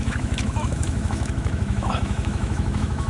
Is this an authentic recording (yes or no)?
no